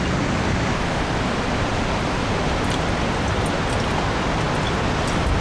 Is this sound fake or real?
real